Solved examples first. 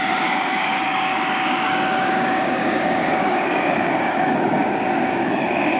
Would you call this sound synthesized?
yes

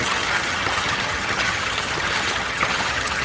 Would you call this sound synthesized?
yes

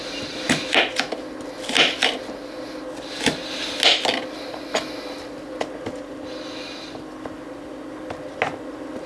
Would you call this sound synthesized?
no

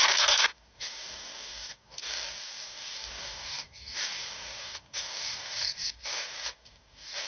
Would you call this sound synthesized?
yes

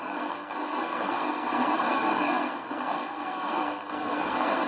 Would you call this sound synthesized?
yes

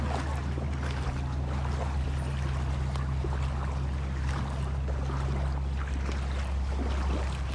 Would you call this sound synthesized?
no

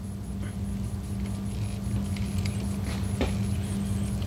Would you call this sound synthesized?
no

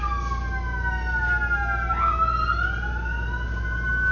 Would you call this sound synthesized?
no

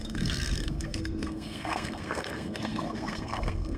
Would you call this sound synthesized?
yes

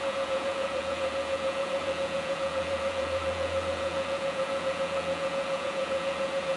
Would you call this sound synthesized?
yes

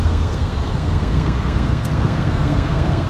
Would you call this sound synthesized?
yes